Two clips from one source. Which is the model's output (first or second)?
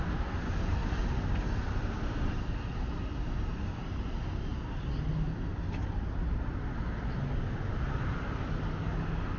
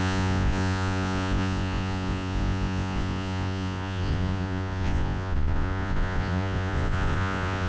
second